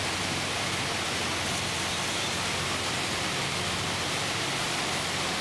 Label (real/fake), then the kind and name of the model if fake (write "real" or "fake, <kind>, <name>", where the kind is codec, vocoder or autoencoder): real